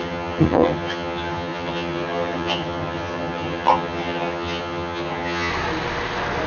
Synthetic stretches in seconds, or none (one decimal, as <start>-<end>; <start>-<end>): 0.0-5.5